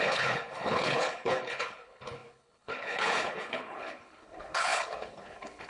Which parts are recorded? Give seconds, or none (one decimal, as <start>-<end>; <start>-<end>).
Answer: none